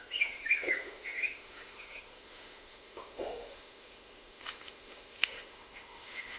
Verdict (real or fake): fake